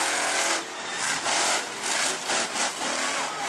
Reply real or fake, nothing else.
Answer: real